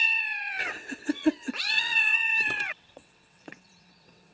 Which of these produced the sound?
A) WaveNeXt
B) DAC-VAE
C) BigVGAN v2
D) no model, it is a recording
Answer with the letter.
A